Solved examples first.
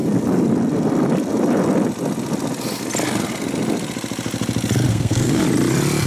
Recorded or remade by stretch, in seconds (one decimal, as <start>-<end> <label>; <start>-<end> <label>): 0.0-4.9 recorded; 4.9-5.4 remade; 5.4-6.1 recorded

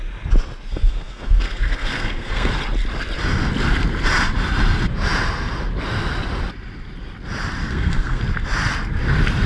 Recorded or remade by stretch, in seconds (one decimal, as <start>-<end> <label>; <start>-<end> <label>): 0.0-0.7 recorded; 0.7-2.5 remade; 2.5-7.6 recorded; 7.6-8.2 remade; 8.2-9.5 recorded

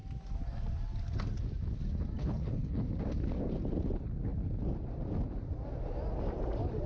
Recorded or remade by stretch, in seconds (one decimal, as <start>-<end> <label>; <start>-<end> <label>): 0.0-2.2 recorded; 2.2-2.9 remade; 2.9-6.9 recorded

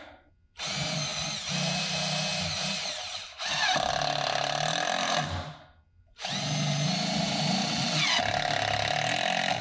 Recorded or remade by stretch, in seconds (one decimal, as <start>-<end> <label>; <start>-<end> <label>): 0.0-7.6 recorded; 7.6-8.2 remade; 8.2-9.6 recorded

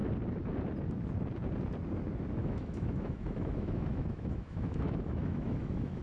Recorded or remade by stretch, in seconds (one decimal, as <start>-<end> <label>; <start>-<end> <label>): 0.0-2.4 recorded; 2.4-6.0 remade

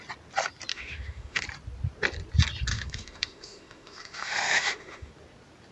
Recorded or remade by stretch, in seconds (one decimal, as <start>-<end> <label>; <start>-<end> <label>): 0.0-0.7 recorded; 0.7-1.4 remade; 1.4-2.7 recorded; 2.7-5.1 remade; 5.1-5.7 recorded

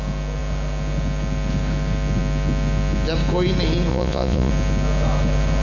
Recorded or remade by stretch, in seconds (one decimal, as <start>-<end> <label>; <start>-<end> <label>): 0.0-3.9 recorded; 3.9-4.5 remade; 4.5-5.6 recorded

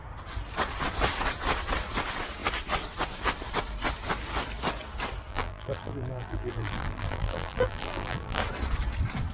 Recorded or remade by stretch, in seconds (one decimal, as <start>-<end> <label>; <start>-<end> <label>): 0.0-5.3 recorded; 5.3-8.4 remade; 8.4-9.3 recorded